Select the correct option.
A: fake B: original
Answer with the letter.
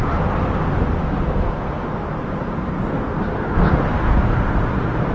B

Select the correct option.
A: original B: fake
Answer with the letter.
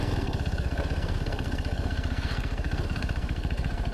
B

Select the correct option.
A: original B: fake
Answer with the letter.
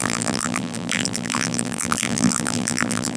B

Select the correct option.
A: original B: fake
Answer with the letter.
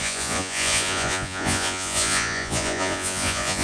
B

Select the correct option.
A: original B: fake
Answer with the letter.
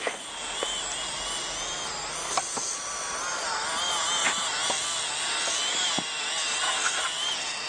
A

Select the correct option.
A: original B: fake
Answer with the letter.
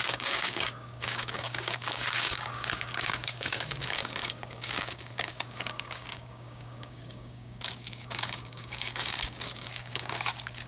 B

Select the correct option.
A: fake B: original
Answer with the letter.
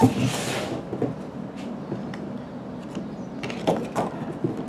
B